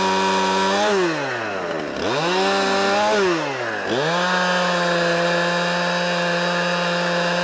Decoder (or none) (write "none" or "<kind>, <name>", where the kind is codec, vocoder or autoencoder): none